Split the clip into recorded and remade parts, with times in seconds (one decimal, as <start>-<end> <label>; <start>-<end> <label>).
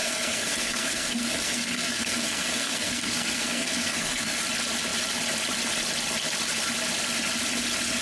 0.0-4.4 remade; 4.4-8.0 recorded